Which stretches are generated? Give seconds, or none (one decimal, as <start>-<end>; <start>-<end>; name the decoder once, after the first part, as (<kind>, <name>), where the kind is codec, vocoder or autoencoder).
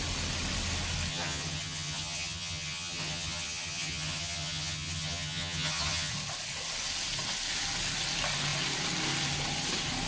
1.1-6.1 (vocoder, HiFi-GAN)